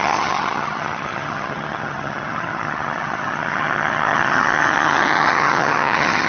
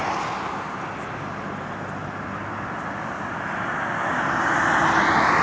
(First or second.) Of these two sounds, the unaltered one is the second